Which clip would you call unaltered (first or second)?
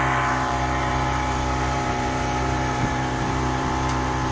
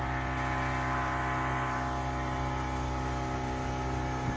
second